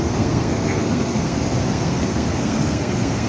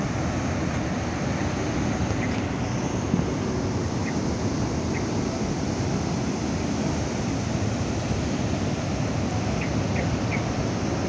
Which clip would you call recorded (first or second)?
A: second